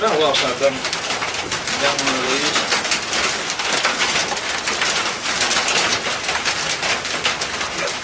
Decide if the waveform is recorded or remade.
recorded